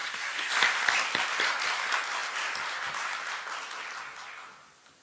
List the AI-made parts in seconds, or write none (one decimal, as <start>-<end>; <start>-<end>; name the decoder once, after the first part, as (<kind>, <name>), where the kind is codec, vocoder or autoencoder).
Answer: 0.0-0.5 (codec, SNAC)